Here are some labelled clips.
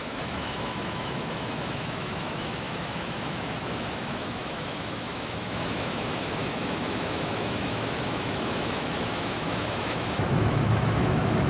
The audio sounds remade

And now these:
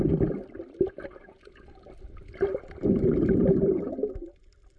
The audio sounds recorded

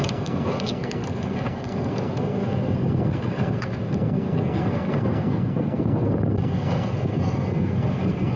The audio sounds remade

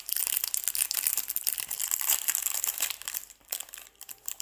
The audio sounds remade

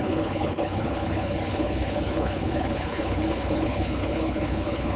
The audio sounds remade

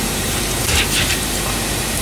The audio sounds remade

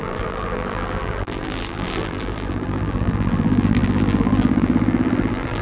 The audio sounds remade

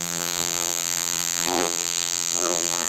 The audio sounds remade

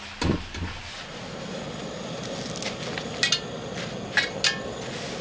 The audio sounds recorded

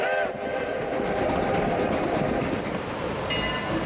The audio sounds recorded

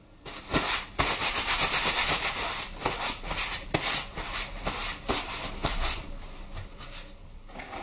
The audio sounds recorded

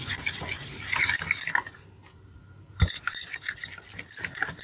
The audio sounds recorded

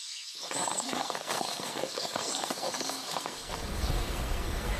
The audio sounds remade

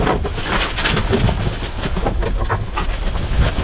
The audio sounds recorded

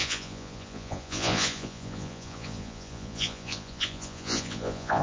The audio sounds remade